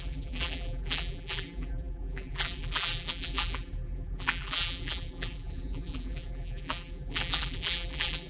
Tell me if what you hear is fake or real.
fake